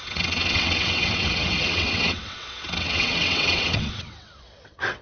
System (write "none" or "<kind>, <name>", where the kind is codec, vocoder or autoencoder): vocoder, WaveNeXt